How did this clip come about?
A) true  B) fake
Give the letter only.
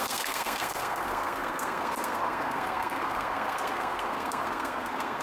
B